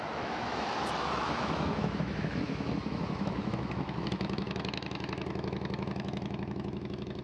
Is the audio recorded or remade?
remade